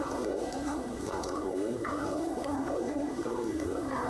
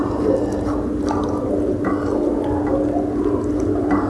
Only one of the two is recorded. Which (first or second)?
second